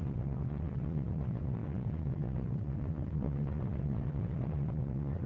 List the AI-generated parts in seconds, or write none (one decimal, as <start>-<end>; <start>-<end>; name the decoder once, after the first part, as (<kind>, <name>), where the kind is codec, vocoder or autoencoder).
0.0-5.3 (vocoder, WaveNeXt)